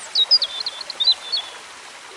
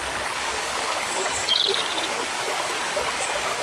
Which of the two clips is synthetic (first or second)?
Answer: second